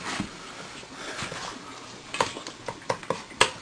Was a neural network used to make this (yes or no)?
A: no